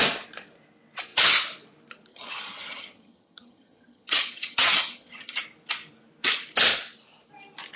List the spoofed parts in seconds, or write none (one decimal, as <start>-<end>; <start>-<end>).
2.1-5.4